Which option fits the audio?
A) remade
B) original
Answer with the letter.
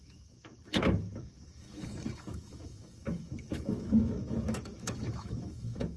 A